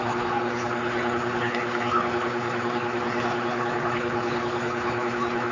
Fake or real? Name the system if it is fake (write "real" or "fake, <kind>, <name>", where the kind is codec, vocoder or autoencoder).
fake, codec, HILCodec